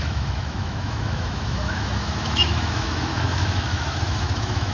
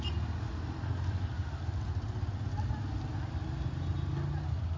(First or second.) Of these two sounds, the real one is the second